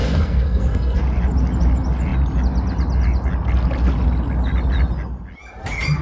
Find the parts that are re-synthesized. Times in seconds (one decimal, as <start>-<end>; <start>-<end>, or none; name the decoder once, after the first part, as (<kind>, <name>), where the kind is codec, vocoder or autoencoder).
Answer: 0.0-1.0 (codec, SNAC)